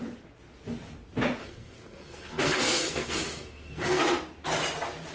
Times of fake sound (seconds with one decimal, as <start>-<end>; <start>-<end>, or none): 1.4-4.0